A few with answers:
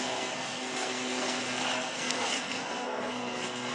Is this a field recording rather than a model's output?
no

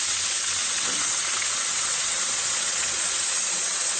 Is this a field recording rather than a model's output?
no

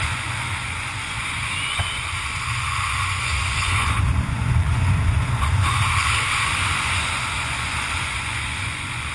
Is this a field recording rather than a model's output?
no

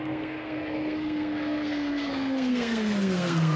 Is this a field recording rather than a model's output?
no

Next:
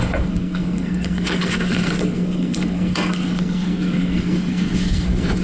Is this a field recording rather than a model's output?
no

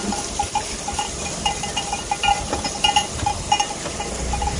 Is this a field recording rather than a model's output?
yes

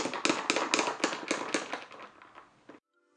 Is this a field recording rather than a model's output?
yes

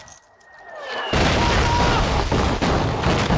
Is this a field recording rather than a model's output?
yes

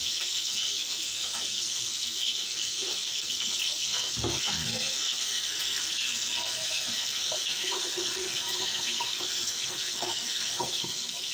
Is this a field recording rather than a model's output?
no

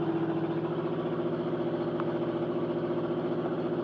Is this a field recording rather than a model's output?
yes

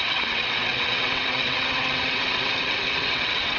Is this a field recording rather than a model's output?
no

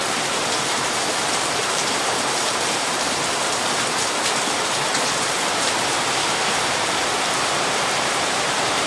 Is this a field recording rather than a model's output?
no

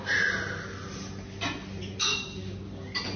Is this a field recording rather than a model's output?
yes